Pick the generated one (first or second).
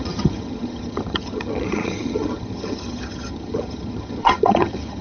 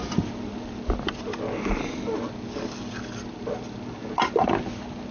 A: first